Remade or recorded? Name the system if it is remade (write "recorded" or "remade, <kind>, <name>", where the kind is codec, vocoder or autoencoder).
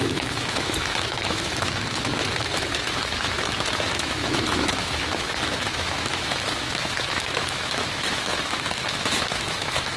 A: remade, autoencoder, DAC-VAE